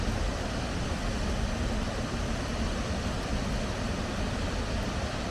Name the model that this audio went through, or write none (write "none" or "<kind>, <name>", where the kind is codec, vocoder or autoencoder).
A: none